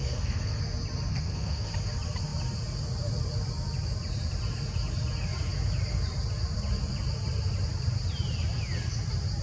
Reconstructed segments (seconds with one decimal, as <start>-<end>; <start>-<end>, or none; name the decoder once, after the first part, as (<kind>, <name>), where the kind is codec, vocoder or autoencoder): 0.0-0.6 (codec, SNAC); 1.1-1.7